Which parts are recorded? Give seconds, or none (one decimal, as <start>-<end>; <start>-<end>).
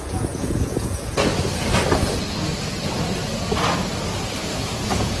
1.3-4.4